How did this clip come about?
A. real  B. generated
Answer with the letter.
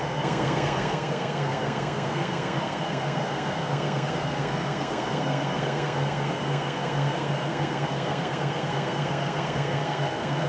B